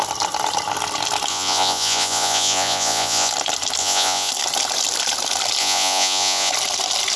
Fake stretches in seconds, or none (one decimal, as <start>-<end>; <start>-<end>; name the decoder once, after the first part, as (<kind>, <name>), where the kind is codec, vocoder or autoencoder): 1.3-3.3 (vocoder, Vocos); 3.8-4.3; 5.6-6.5